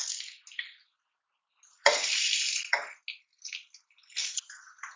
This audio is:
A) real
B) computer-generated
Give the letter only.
A